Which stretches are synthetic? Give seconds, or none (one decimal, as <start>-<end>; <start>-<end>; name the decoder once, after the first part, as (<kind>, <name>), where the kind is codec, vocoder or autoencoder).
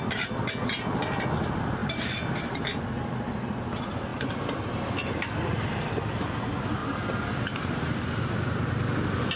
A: 1.8-2.9 (vocoder, BigVGAN v2)